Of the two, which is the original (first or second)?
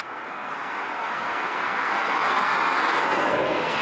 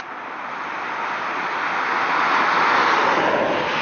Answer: second